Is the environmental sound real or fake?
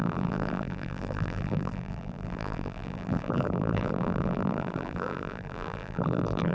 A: fake